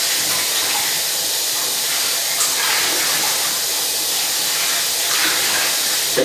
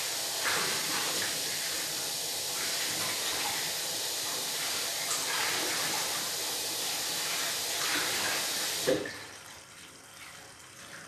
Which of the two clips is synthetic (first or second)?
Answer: second